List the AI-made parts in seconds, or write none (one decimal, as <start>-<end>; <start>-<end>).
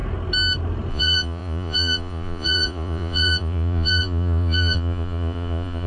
0.9-5.9